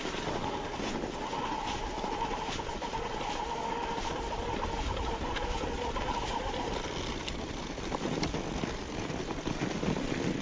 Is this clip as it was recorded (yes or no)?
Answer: yes